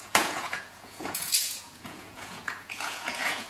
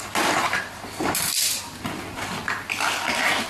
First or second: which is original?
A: second